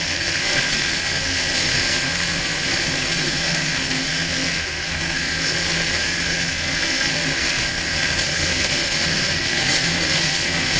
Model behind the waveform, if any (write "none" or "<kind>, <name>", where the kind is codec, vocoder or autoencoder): codec, SNAC